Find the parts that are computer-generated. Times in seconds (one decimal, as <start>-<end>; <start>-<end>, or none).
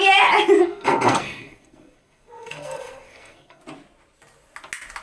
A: 0.6-3.6